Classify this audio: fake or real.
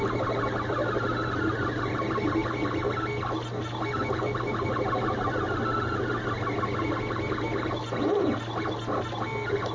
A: real